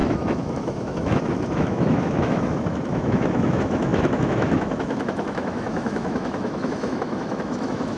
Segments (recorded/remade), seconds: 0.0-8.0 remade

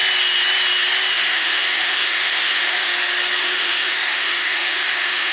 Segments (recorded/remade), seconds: 0.0-1.1 recorded; 1.1-2.9 remade; 2.9-3.4 recorded; 3.4-5.3 remade